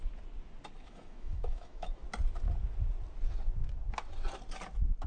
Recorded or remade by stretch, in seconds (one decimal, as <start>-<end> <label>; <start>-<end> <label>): 0.0-0.8 recorded; 0.8-2.0 remade; 2.0-5.1 recorded